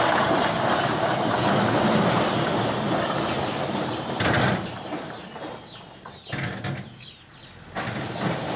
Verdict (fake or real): real